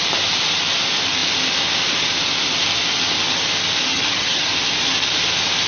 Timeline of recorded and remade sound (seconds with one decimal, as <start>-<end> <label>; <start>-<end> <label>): 0.0-3.9 recorded; 3.9-4.5 remade; 4.5-5.7 recorded